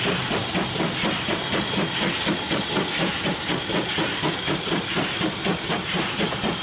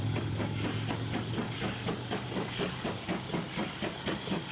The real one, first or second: first